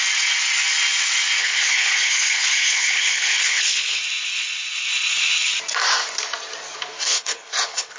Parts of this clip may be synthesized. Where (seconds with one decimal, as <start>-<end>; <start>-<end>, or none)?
1.4-4.0; 7.0-8.0